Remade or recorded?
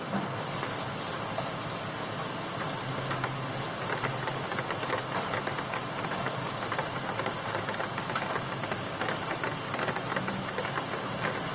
recorded